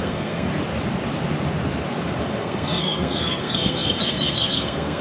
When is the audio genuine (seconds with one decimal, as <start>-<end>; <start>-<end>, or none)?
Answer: 0.5-2.2